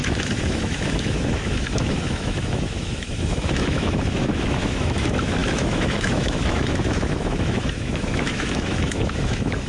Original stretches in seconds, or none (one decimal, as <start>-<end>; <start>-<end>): none